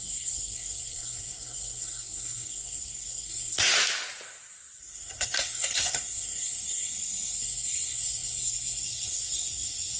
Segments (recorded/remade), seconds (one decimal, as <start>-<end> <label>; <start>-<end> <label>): 0.0-3.7 remade; 3.7-4.8 recorded; 4.8-10.0 remade